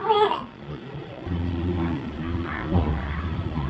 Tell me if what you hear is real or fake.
fake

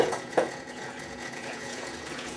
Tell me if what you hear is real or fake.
fake